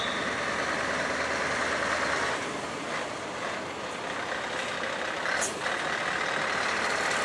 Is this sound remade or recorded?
recorded